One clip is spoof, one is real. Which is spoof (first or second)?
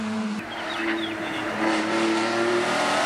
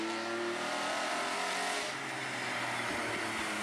first